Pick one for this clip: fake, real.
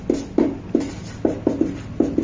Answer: real